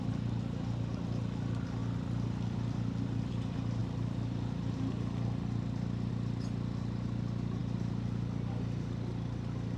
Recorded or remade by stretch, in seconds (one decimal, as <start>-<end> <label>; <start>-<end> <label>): 0.0-9.8 recorded